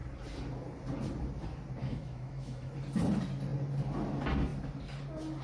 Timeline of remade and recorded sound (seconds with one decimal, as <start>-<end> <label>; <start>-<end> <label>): 0.0-1.8 recorded; 1.8-2.7 remade; 2.7-5.4 recorded